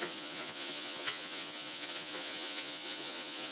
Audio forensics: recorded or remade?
remade